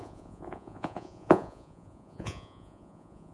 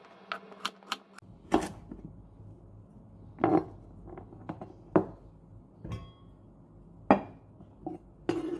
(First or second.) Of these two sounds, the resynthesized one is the first